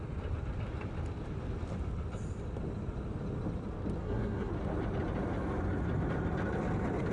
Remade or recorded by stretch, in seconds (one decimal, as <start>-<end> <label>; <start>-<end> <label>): 0.0-4.0 recorded; 4.0-4.5 remade; 4.5-7.1 recorded